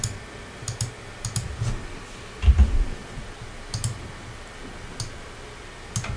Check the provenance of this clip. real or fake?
real